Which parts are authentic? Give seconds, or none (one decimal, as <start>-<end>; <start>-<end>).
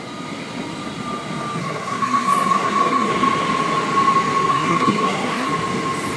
0.0-1.6; 3.1-4.5; 5.5-6.2